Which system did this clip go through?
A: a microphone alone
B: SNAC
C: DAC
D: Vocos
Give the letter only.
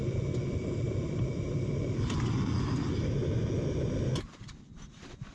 A